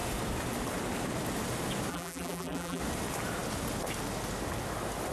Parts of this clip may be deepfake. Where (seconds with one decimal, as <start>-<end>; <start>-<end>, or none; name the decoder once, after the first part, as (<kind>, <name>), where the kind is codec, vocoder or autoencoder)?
1.9-2.8 (vocoder, BigVGAN v2)